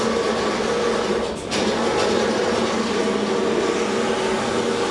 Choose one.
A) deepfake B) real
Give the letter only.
B